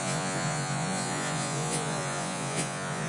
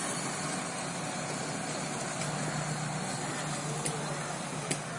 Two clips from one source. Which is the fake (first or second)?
first